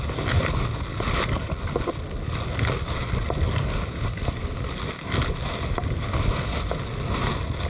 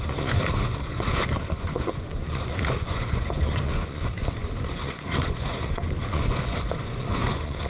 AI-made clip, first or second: second